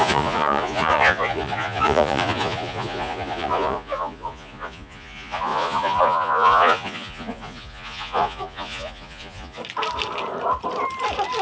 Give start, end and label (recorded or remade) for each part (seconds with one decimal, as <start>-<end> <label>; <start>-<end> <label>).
0.0-9.6 remade; 9.6-11.4 recorded